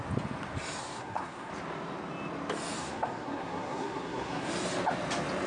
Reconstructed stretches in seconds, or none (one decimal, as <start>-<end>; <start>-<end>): 0.8-1.5; 2.8-4.5